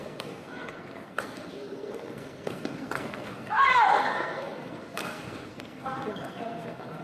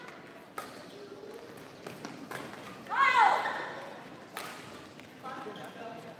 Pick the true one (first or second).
second